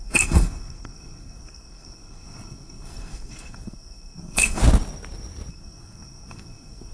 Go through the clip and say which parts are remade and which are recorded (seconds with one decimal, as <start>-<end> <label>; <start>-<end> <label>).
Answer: 0.0-4.6 remade; 4.6-5.5 recorded; 5.5-6.9 remade